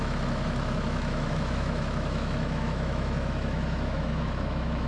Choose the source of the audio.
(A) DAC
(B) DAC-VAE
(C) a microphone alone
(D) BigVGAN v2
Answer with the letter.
B